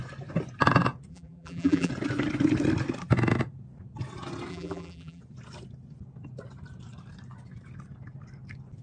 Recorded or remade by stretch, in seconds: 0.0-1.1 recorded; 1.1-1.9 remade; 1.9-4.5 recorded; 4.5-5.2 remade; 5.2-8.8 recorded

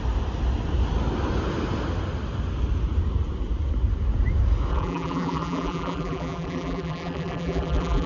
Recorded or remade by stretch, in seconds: 0.0-4.7 recorded; 4.7-8.1 remade

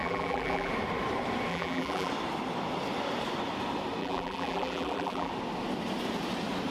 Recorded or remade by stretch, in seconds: 0.0-0.7 remade; 0.7-1.5 recorded; 1.5-2.1 remade; 2.1-4.0 recorded; 4.0-5.3 remade; 5.3-6.7 recorded

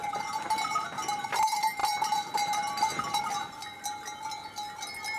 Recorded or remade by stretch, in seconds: 0.0-5.2 recorded

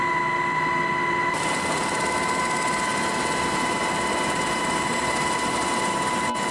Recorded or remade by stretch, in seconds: 0.0-1.2 recorded; 1.2-2.4 remade; 2.4-6.5 recorded